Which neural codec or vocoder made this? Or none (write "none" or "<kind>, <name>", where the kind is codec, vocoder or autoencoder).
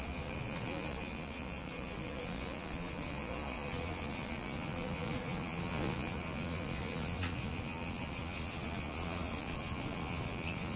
vocoder, Vocos